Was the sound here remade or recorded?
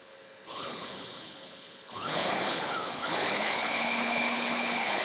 remade